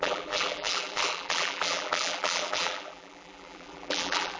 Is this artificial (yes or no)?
yes